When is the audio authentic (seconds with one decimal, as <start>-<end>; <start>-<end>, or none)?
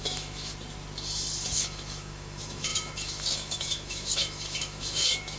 0.5-1.4